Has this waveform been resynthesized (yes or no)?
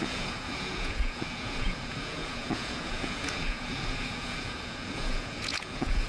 yes